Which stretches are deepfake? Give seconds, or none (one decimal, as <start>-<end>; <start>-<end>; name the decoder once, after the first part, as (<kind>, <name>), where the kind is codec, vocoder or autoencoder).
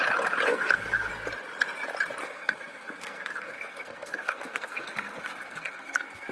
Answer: 0.5-1.1 (codec, SNAC); 2.2-6.3